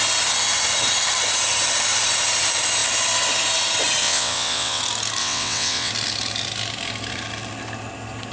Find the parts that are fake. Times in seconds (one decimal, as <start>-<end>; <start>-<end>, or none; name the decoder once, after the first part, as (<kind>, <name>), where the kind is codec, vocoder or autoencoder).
4.0-4.8 (vocoder, WaveNeXt); 5.2-5.9